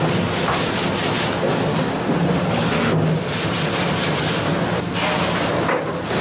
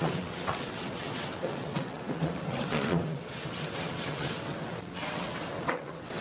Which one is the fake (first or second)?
second